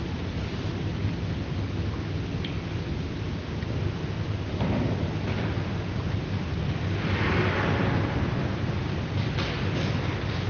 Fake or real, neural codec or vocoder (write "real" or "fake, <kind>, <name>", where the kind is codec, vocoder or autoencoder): real